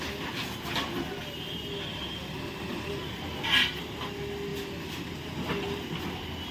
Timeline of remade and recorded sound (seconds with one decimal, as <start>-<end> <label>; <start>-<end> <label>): 0.0-2.7 recorded; 2.7-3.4 remade; 3.4-6.5 recorded